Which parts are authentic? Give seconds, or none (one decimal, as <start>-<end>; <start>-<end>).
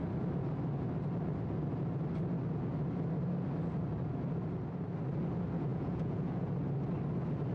0.0-5.7; 6.5-7.5